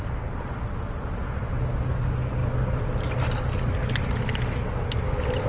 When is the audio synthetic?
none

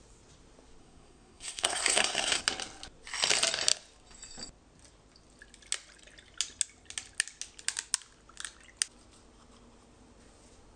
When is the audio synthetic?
0.8-2.4 (codec, SNAC)

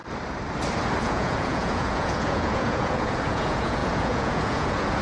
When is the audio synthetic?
1.0-5.0 (vocoder, Vocos)